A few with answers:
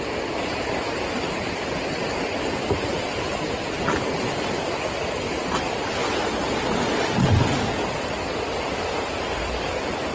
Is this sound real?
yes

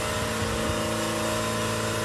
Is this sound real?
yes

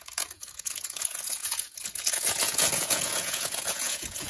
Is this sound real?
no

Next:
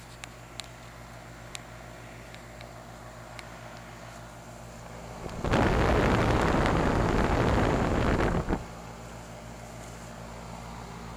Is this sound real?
yes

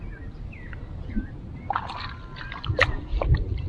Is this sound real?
yes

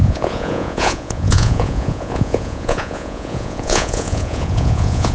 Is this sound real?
no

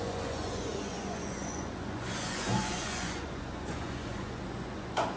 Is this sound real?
no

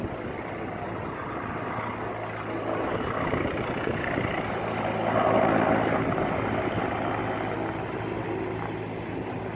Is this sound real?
yes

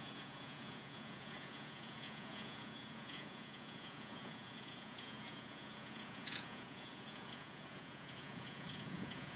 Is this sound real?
no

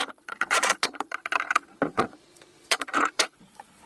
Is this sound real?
no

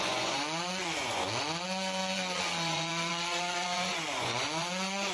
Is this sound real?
no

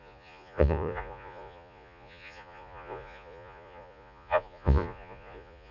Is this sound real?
no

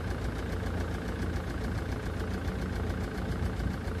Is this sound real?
yes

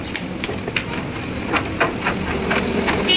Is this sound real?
yes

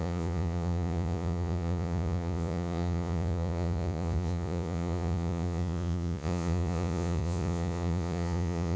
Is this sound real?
no